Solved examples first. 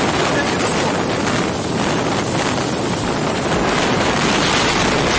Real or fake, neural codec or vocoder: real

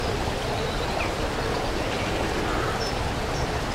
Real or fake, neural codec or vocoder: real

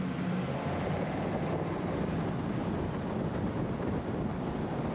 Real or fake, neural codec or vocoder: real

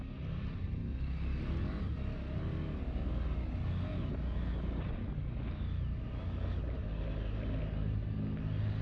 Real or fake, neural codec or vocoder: real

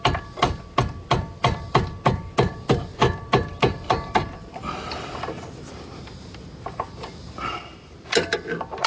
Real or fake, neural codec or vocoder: real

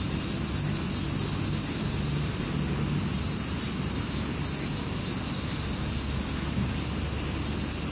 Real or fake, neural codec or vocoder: real